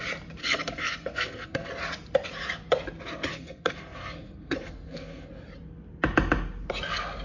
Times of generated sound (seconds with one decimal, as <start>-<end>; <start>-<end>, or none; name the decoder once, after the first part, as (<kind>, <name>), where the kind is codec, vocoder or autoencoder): 0.4-1.7 (codec, SNAC); 3.3-5.3